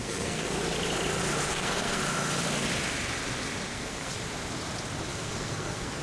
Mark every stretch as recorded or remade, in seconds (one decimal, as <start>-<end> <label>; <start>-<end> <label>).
0.0-0.6 remade; 0.6-1.5 recorded; 1.5-2.0 remade; 2.0-3.7 recorded; 3.7-4.2 remade; 4.2-5.1 recorded; 5.1-6.0 remade